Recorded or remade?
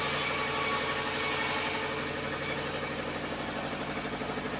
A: recorded